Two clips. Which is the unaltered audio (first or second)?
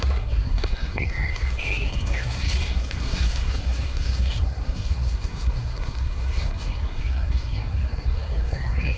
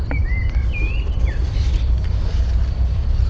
second